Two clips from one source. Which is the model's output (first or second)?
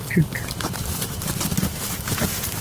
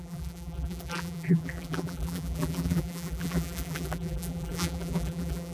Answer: second